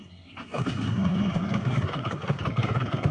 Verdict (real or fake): fake